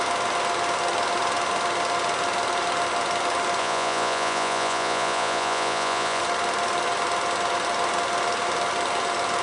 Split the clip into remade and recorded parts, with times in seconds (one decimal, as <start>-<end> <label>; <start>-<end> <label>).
0.0-3.6 recorded; 3.6-6.2 remade; 6.2-9.4 recorded